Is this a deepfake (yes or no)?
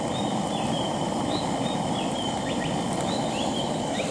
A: yes